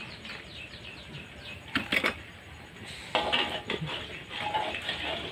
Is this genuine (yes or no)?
yes